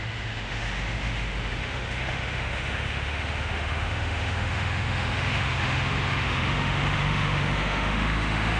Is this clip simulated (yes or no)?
yes